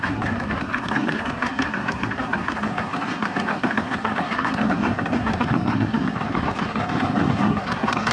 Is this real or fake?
fake